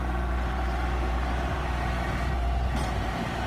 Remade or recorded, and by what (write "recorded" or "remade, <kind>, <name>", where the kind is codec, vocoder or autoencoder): remade, vocoder, BigVGAN v2